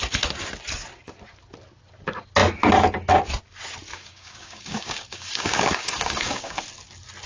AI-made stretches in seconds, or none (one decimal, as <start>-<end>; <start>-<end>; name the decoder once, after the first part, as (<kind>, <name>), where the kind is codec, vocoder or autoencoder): 3.9-6.6 (codec, DAC)